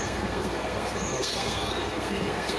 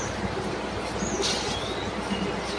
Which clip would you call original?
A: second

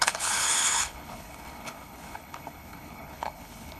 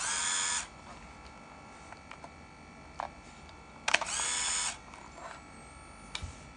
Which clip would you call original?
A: second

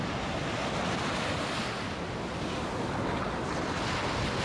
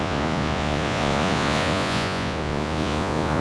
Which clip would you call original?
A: first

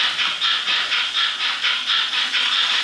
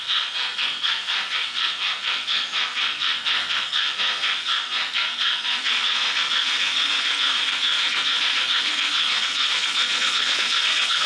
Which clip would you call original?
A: first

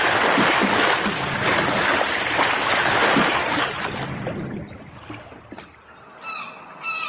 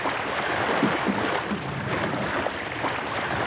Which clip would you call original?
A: first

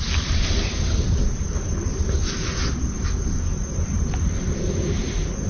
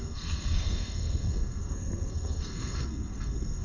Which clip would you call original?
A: first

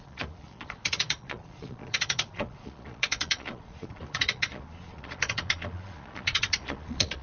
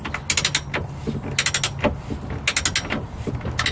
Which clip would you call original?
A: second